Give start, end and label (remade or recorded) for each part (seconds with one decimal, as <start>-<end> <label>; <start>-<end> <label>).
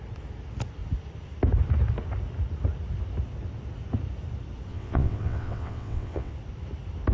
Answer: 0.0-4.7 recorded; 4.7-6.3 remade; 6.3-7.1 recorded